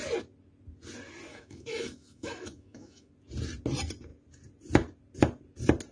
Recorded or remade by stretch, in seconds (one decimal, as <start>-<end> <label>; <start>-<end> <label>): 0.0-1.3 recorded; 1.3-3.1 remade; 3.1-5.9 recorded

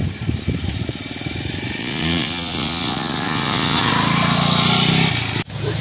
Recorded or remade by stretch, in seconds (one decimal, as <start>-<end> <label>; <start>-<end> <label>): 0.0-1.8 recorded; 1.8-3.9 remade; 3.9-5.8 recorded

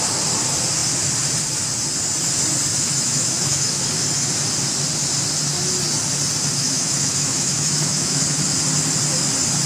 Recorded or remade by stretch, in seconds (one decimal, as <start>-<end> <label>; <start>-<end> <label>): 0.0-2.7 recorded; 2.7-3.8 remade; 3.8-6.6 recorded; 6.6-8.2 remade; 8.2-9.7 recorded

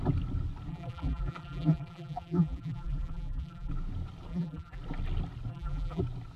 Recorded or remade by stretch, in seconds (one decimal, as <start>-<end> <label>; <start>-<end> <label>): 0.0-0.7 recorded; 0.7-3.7 remade; 3.7-4.3 recorded; 4.3-4.8 remade; 4.8-5.5 recorded; 5.5-6.0 remade; 6.0-6.4 recorded

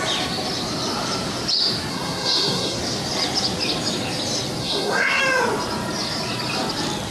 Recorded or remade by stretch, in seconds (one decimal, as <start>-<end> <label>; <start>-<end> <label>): 0.0-1.9 recorded; 1.9-2.8 remade; 2.8-4.6 recorded; 4.6-5.2 remade; 5.2-7.1 recorded

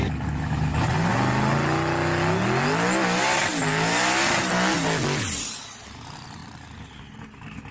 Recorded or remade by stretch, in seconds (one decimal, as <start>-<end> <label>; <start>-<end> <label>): 0.0-7.7 recorded